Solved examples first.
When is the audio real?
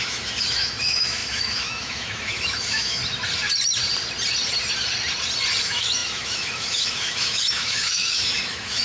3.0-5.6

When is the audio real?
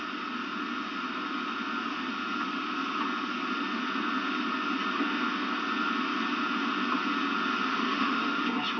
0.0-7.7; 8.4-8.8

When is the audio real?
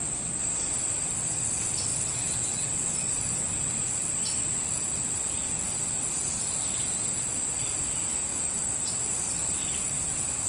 0.0-8.1; 8.6-10.5